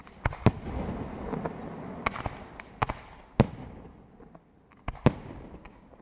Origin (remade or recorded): recorded